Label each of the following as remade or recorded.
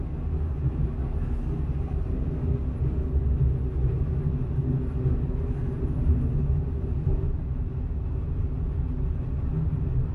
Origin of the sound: recorded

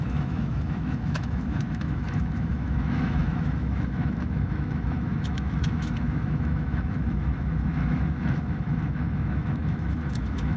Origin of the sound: remade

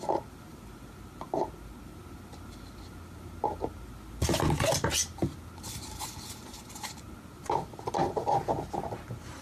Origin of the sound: recorded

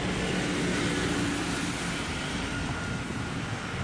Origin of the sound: recorded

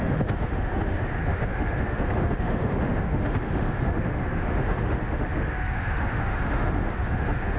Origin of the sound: remade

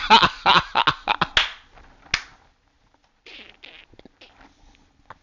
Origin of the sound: recorded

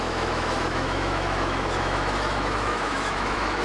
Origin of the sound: remade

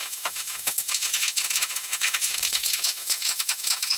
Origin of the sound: remade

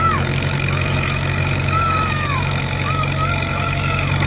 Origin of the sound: remade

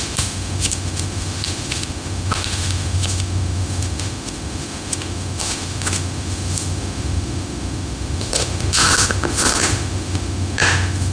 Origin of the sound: remade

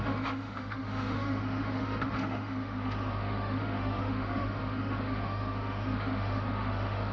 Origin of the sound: remade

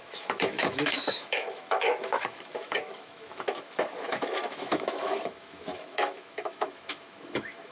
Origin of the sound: remade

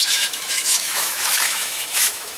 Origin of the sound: remade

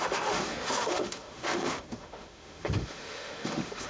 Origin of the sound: remade